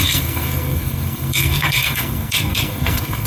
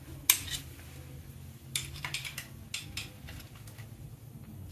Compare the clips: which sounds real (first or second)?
second